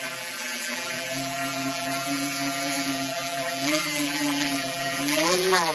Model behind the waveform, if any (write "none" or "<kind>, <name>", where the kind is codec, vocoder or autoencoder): vocoder, BigVGAN v2